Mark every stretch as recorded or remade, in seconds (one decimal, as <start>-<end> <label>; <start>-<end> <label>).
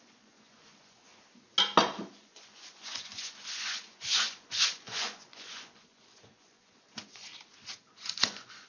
0.0-1.1 remade; 1.1-2.1 recorded; 2.1-7.3 remade; 7.3-7.8 recorded; 7.8-8.7 remade